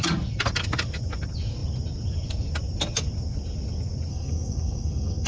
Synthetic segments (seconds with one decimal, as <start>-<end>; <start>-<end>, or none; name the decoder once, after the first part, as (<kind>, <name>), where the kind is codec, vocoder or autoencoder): 4.1-5.3 (codec, SNAC)